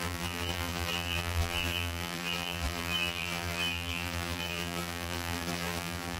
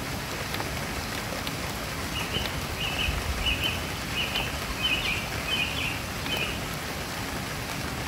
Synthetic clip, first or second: first